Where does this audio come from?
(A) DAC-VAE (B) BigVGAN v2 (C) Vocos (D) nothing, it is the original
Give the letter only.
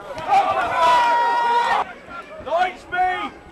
B